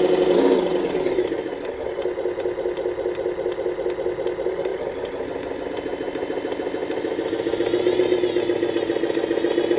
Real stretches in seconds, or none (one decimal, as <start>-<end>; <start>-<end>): 0.0-0.7; 1.5-4.7; 5.7-9.8

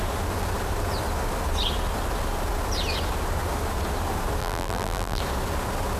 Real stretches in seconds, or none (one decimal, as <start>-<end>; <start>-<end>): 0.0-4.4; 5.2-6.0

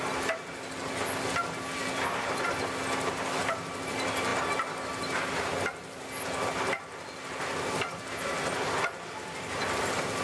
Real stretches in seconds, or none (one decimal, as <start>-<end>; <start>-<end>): 0.0-1.8; 2.3-10.2

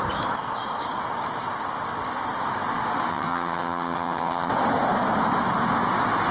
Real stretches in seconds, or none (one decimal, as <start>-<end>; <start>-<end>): 0.0-3.1; 4.5-6.3

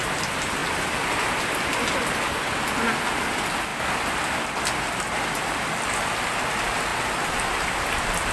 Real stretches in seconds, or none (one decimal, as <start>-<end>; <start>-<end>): 0.0-8.3

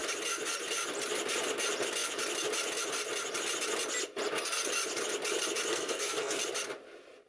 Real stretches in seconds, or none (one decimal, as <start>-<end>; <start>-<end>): 0.0-5.7; 6.4-7.3